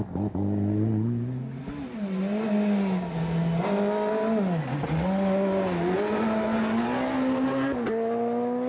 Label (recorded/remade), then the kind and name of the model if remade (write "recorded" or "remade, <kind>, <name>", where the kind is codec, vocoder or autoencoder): recorded